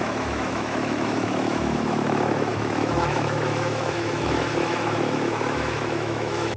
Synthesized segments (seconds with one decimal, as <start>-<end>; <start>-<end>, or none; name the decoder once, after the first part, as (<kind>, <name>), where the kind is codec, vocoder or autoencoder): 0.0-6.6 (autoencoder, DAC-VAE)